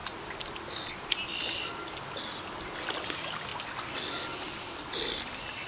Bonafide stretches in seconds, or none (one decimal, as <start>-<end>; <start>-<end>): 0.0-5.7